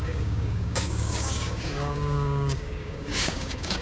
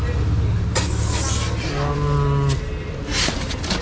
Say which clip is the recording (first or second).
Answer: second